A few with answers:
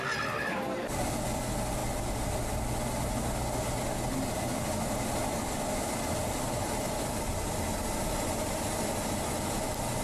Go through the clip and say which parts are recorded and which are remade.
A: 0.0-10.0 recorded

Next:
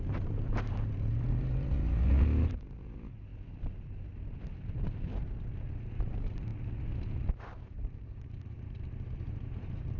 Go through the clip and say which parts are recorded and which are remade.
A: 0.0-3.3 remade; 3.3-6.0 recorded; 6.0-6.5 remade; 6.5-7.2 recorded; 7.2-10.0 remade

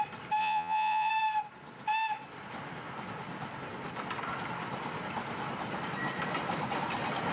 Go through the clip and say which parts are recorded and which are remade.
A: 0.0-0.4 recorded; 0.4-1.1 remade; 1.1-7.3 recorded